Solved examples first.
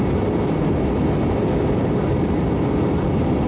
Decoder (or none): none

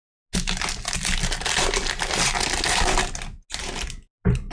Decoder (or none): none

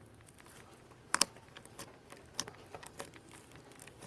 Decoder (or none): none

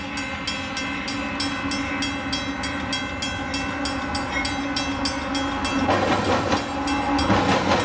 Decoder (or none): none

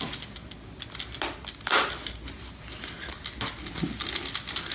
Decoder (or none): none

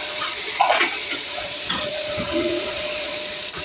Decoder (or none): vocoder, Vocos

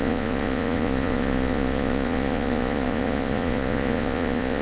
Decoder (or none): vocoder, Vocos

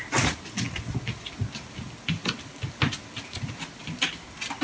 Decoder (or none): none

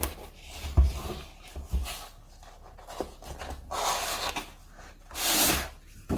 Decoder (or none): none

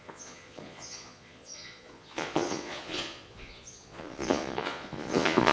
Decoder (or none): vocoder, Vocos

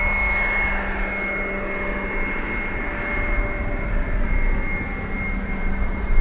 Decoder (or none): none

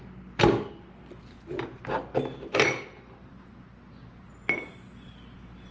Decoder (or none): none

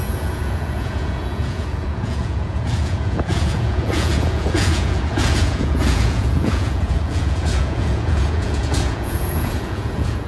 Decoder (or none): vocoder, Vocos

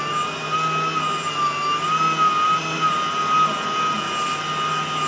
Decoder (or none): none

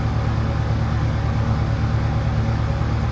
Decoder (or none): none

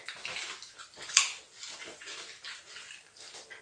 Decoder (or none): none